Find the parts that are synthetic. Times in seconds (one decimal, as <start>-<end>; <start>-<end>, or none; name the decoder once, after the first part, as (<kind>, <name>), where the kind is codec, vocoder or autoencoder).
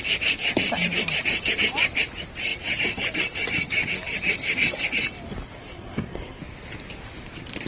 5.6-6.4 (codec, SNAC)